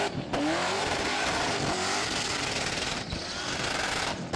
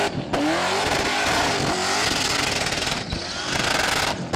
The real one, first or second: second